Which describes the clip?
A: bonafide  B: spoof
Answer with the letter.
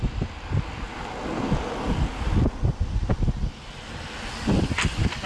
A